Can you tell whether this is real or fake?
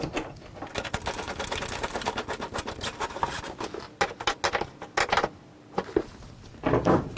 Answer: real